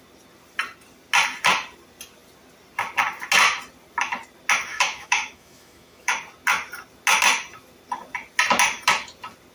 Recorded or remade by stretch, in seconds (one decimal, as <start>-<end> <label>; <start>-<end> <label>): 0.0-4.7 recorded; 4.7-6.1 remade; 6.1-9.5 recorded